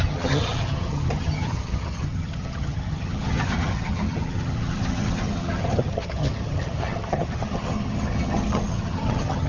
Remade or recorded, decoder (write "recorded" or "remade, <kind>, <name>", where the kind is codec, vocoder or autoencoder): remade, vocoder, HiFi-GAN